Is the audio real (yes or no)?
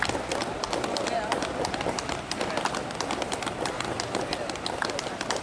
yes